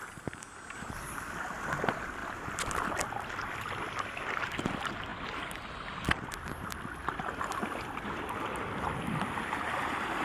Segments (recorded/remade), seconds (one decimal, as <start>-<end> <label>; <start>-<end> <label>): 0.0-10.2 recorded